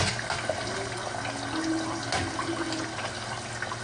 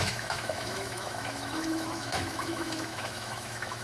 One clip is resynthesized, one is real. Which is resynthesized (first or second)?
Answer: second